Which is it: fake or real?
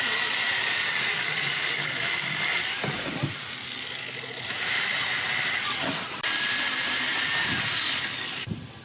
fake